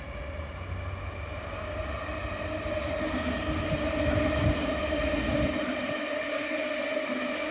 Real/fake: real